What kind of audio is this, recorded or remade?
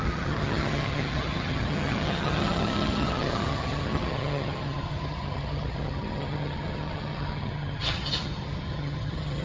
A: remade